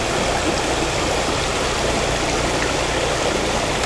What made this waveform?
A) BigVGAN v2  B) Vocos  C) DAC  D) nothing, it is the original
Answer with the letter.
D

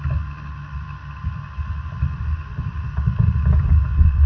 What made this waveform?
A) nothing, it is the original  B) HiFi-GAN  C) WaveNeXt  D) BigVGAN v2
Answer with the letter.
A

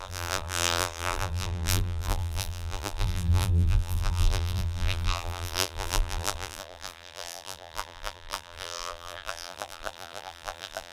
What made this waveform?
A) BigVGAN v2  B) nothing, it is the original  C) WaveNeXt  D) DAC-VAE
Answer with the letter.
A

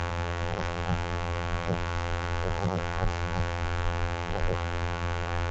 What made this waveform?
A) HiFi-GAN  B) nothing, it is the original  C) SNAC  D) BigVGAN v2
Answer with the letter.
D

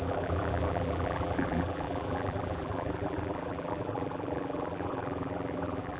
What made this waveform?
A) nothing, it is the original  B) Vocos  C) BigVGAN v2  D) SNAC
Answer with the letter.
C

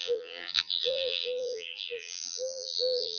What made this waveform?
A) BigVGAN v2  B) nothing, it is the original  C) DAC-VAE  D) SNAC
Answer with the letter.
A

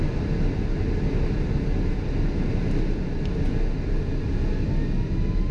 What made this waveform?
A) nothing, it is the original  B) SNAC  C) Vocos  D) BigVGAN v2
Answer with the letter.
A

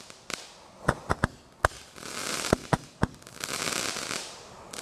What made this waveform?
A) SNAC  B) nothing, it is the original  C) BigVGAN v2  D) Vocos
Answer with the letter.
B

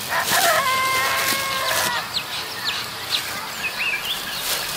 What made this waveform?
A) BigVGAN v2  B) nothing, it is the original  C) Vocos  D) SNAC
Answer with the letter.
B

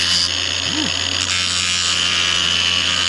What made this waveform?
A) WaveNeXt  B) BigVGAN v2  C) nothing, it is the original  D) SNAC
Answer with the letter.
C